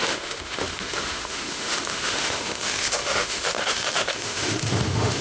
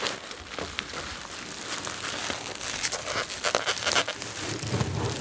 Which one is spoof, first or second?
first